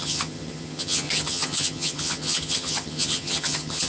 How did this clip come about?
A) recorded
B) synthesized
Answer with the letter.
B